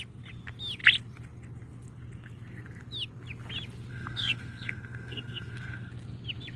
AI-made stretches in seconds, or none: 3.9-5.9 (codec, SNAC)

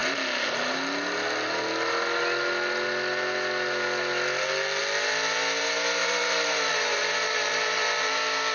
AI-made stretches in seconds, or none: 6.0-8.1 (vocoder, BigVGAN v2)

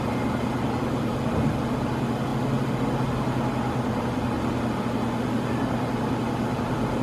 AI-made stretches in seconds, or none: none

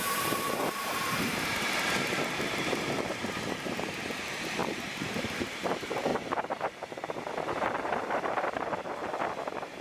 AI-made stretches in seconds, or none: 0.0-9.0 (vocoder, BigVGAN v2)